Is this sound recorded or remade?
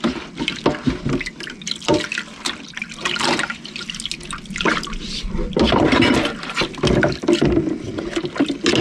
recorded